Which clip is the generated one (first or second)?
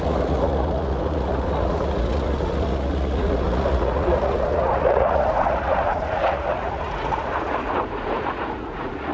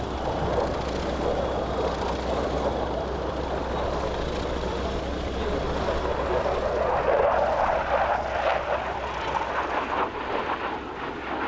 first